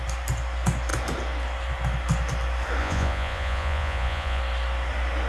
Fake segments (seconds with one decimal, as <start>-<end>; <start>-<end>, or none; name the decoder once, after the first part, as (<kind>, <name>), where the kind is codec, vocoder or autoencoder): 2.8-4.4 (vocoder, Vocos)